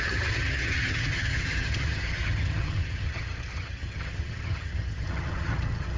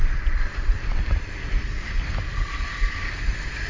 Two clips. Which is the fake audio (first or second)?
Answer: first